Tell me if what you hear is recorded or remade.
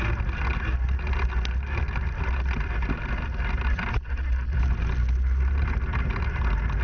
recorded